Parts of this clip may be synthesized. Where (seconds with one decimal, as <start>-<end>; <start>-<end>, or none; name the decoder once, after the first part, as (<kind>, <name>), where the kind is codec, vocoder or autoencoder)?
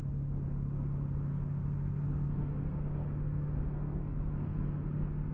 1.3-2.8 (codec, SNAC); 3.2-4.8